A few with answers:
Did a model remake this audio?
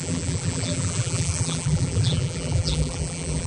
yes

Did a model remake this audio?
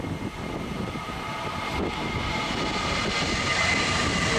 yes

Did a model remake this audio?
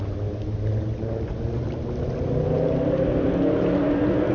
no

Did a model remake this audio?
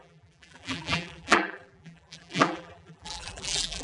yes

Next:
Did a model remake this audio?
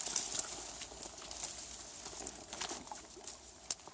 no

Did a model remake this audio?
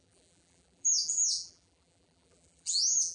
yes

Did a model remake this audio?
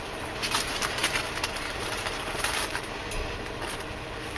yes